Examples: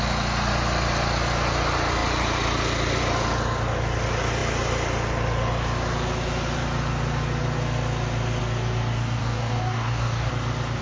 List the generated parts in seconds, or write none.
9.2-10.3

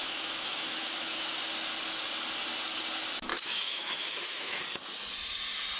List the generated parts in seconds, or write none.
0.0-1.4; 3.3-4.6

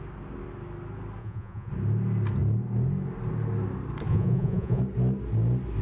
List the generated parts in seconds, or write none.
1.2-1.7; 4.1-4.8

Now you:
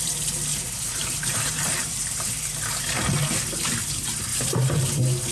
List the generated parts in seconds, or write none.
0.5-2.9; 4.3-5.3